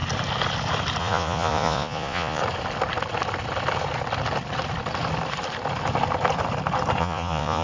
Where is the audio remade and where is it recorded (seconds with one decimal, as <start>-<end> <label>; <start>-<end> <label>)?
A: 0.0-1.0 recorded; 1.0-2.4 remade; 2.4-7.0 recorded; 7.0-7.6 remade